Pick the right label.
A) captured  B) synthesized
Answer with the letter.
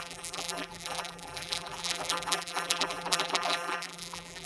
B